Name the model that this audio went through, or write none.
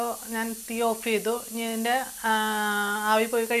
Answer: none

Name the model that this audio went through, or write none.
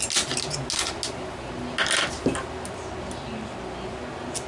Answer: none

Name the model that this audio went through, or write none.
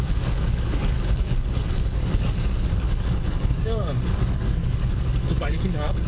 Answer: codec, DAC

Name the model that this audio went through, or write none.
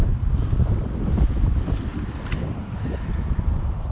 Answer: none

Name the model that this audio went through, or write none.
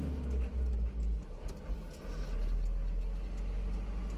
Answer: none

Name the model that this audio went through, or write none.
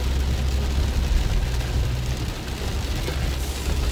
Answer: none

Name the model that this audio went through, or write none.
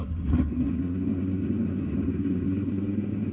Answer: codec, SNAC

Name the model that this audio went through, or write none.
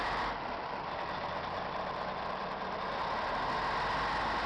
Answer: none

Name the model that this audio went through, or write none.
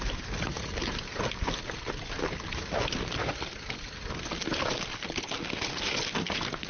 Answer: none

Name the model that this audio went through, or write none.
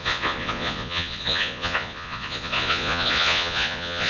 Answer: vocoder, Vocos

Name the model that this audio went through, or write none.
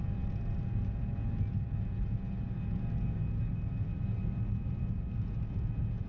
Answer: none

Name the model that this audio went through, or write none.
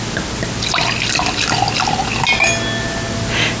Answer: none